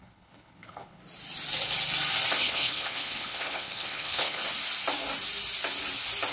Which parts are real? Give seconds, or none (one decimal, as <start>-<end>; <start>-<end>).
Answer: 1.0-2.4; 4.4-6.3